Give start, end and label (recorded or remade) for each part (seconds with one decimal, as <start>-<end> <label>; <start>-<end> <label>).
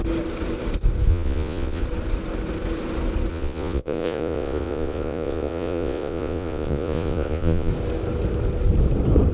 0.0-1.1 recorded; 1.1-1.8 remade; 1.8-3.3 recorded; 3.3-7.7 remade; 7.7-9.3 recorded